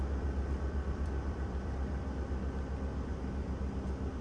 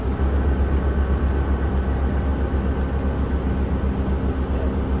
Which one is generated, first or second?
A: first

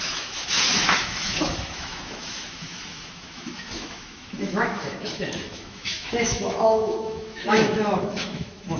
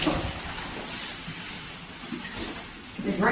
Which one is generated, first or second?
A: first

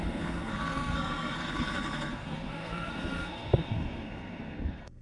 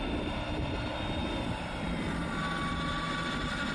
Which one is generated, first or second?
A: first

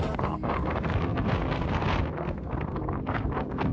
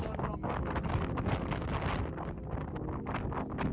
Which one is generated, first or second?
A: first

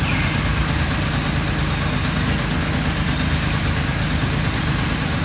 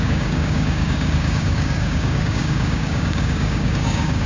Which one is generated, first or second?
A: second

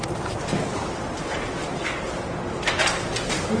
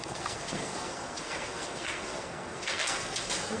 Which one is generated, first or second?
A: second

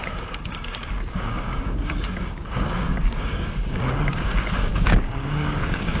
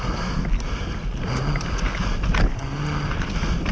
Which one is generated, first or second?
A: first